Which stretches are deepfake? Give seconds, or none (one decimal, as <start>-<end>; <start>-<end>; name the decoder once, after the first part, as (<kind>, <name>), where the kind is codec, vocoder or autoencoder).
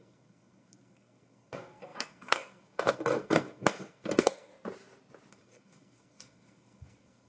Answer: 0.0-4.5 (codec, SNAC); 5.3-7.3